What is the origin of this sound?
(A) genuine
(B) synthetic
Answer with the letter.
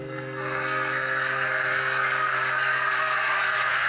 B